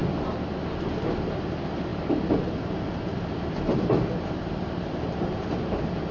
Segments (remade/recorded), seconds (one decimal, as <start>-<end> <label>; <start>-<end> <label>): 0.0-0.6 remade; 0.6-1.9 recorded; 1.9-5.6 remade; 5.6-6.1 recorded